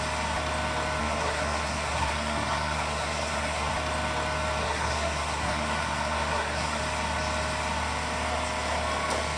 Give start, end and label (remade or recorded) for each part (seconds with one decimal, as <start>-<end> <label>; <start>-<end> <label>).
0.0-1.0 recorded; 1.0-3.7 remade; 3.7-4.6 recorded; 4.6-6.8 remade; 6.8-9.4 recorded